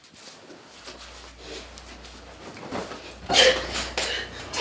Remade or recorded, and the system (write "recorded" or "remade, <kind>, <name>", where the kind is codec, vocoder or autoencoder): recorded